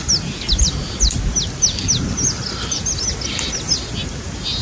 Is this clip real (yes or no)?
yes